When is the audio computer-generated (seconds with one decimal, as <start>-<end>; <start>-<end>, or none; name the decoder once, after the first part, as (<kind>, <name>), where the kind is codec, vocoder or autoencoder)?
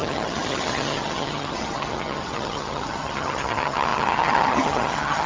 0.0-5.3 (vocoder, HiFi-GAN)